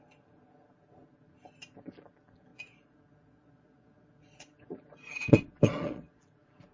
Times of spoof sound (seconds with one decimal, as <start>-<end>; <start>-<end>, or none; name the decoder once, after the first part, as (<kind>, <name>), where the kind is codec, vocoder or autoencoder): 2.5-6.2 (vocoder, Vocos)

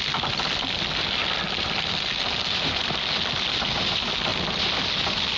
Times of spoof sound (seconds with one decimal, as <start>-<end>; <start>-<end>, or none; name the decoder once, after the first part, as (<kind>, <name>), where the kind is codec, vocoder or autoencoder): none

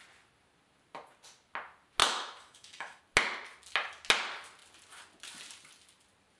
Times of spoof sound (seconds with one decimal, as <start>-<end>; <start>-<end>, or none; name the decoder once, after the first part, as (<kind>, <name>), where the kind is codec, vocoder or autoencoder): 2.0-3.0 (autoencoder, DAC-VAE)